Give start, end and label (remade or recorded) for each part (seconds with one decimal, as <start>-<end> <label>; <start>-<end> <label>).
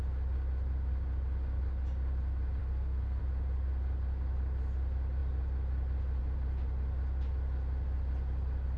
0.0-2.6 recorded; 2.6-3.2 remade; 3.2-8.8 recorded